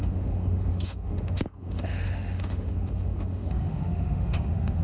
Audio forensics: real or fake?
fake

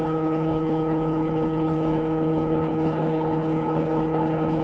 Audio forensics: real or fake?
fake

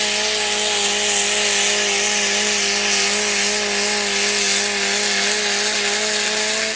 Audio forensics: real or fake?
real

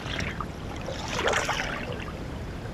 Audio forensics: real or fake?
fake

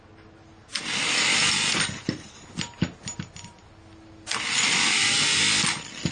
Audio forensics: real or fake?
real